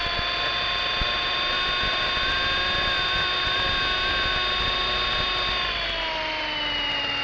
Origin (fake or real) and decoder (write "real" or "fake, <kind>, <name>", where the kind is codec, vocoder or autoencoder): real